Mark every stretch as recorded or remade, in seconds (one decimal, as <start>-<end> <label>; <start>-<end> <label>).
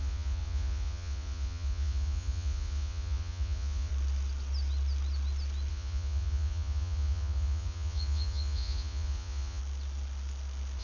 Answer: 0.0-3.9 remade; 3.9-5.7 recorded; 5.7-9.6 remade; 9.6-10.8 recorded